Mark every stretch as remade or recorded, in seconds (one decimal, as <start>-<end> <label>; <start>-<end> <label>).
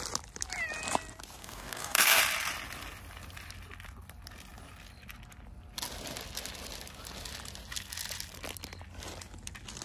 0.0-1.4 recorded; 1.4-2.2 remade; 2.2-9.8 recorded